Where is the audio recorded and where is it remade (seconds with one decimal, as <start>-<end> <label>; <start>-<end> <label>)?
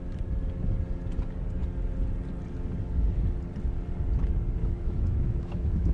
0.0-4.6 recorded; 4.6-5.9 remade